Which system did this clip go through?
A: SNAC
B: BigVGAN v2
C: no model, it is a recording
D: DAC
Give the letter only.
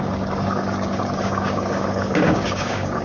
D